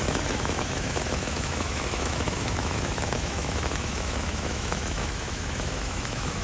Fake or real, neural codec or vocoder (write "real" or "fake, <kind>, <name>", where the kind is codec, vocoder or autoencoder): fake, autoencoder, DAC-VAE